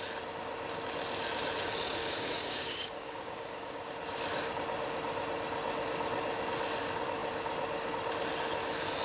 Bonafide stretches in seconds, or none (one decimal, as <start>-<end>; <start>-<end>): 0.0-2.0; 3.9-9.0